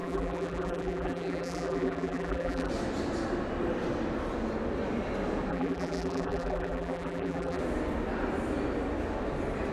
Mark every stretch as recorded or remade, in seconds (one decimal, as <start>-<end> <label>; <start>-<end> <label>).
0.0-2.7 remade; 2.7-5.5 recorded; 5.5-7.6 remade; 7.6-9.7 recorded